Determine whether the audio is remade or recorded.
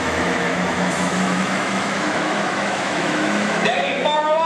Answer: remade